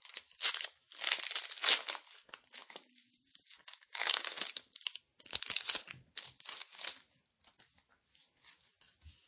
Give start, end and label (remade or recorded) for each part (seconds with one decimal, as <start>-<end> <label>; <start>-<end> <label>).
0.0-2.6 recorded; 2.6-4.5 remade; 4.5-9.3 recorded